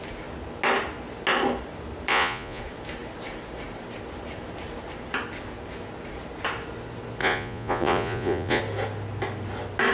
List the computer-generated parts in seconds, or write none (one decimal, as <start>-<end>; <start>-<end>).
2.1-2.6; 7.2-8.6

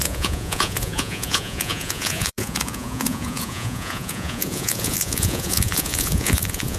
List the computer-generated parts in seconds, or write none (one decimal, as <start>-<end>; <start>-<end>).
0.0-6.8

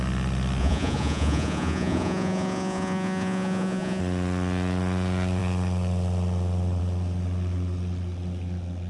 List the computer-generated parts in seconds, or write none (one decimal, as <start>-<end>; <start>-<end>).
0.6-4.0

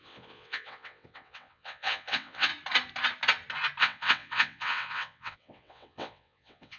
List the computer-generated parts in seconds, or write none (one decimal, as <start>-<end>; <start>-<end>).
0.0-2.5; 3.8-6.8

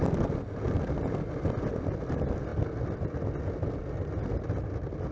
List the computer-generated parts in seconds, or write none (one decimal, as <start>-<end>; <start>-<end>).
none

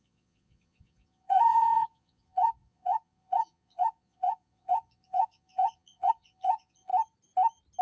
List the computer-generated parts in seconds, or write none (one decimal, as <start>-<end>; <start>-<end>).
0.0-6.9